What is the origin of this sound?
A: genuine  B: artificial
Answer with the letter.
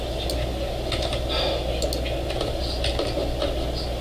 A